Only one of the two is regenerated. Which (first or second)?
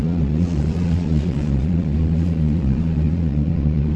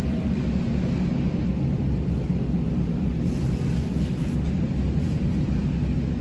first